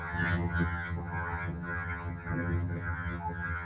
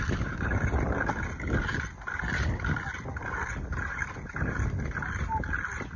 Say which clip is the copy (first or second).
first